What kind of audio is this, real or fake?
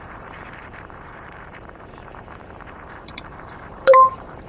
fake